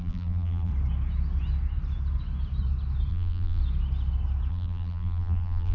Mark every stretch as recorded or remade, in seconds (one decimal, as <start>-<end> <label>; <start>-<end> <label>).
0.0-0.7 remade; 0.7-3.1 recorded; 3.1-3.6 remade; 3.6-4.5 recorded; 4.5-5.7 remade